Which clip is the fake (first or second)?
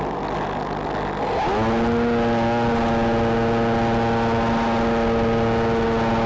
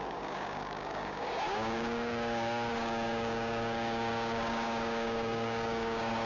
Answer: second